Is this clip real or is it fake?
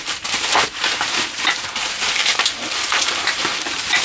fake